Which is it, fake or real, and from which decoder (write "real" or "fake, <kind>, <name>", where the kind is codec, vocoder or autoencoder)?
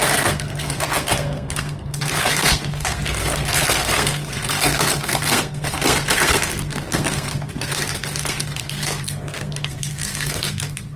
fake, codec, SNAC